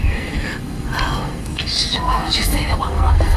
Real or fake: fake